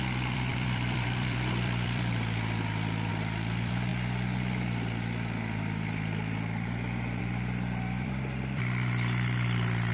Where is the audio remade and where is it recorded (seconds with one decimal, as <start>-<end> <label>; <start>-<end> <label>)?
0.0-3.9 remade; 3.9-7.2 recorded; 7.2-9.9 remade